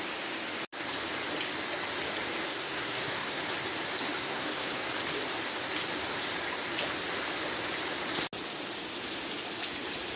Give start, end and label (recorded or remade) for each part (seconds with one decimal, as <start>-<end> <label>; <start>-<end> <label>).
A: 0.0-2.5 recorded; 2.5-3.4 remade; 3.4-4.2 recorded; 4.2-4.9 remade; 4.9-10.2 recorded